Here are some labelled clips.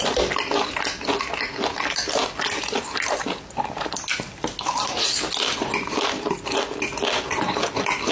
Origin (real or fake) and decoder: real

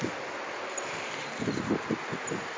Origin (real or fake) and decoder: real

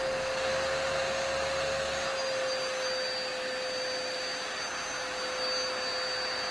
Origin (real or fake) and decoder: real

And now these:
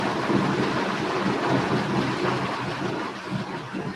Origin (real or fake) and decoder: real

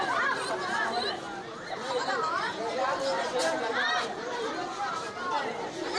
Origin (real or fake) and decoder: fake, vocoder, BigVGAN v2